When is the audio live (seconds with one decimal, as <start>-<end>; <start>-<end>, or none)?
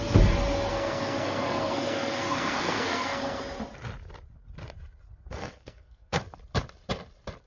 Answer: 0.0-0.7; 3.4-5.3; 6.2-7.5